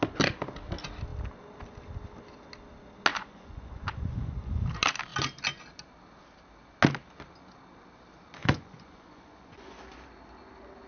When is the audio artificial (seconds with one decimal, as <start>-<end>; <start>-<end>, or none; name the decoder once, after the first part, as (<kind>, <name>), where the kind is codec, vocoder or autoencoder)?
3.1-4.6 (vocoder, Vocos); 8.4-9.8

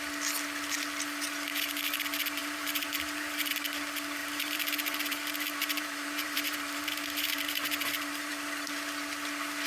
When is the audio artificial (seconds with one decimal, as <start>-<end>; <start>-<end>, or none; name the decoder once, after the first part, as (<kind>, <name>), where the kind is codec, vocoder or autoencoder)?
2.4-3.5 (vocoder, BigVGAN v2); 4.2-8.3

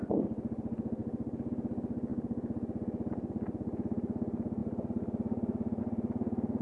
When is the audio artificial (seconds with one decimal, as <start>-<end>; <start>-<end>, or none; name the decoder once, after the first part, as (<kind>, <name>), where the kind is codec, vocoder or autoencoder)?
none

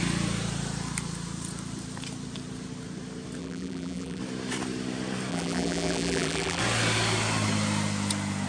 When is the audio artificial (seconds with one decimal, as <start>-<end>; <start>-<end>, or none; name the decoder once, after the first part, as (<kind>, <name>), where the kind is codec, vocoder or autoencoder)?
3.4-4.2 (vocoder, BigVGAN v2); 5.3-6.6